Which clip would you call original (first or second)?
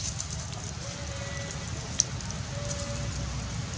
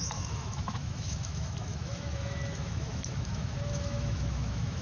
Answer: first